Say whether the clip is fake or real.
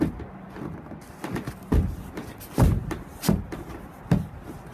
real